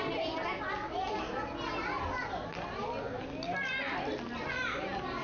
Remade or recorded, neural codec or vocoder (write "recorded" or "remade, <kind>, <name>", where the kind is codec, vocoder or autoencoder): recorded